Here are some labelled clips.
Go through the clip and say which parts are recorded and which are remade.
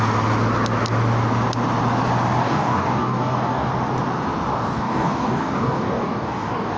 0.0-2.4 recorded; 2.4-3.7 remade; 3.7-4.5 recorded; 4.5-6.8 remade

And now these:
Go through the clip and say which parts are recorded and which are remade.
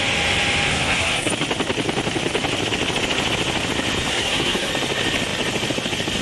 0.0-0.7 recorded; 0.7-1.3 remade; 1.3-4.1 recorded; 4.1-4.7 remade; 4.7-6.2 recorded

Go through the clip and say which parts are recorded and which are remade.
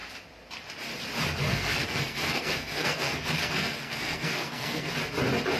0.0-1.5 recorded; 1.5-4.9 remade; 4.9-5.6 recorded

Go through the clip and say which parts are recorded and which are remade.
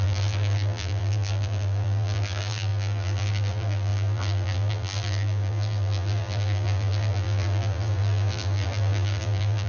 0.0-9.7 remade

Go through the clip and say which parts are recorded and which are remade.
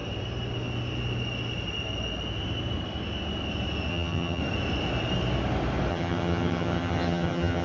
0.0-3.9 recorded; 3.9-4.4 remade; 4.4-5.9 recorded; 5.9-7.6 remade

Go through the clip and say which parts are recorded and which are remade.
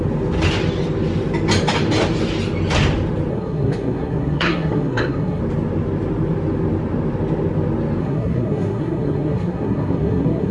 0.0-3.3 recorded; 3.3-5.4 remade; 5.4-8.0 recorded; 8.0-10.5 remade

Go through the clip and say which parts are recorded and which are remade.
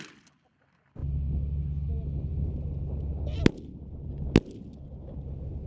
0.0-5.7 recorded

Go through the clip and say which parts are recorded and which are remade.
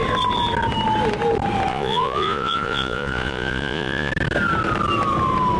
0.0-1.7 recorded; 1.7-4.1 remade; 4.1-5.6 recorded